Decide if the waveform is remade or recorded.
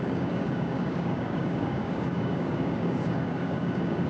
remade